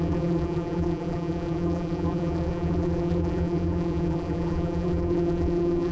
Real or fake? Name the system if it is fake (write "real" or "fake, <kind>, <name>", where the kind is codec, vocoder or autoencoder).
fake, vocoder, BigVGAN v2